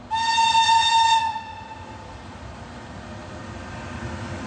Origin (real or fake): real